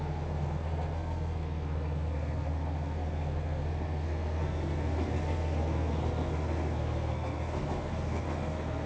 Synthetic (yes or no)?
yes